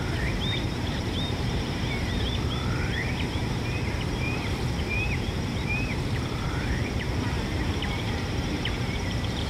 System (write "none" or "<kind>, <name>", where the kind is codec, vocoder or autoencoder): vocoder, BigVGAN v2